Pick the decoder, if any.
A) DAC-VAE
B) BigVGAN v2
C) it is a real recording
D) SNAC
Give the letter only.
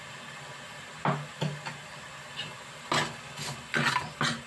C